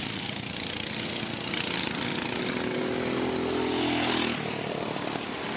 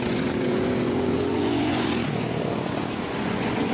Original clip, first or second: first